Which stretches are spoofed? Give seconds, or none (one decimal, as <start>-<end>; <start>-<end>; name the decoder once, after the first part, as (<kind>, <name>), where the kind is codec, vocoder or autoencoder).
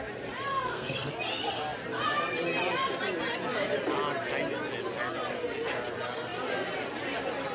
0.5-1.1 (codec, SNAC)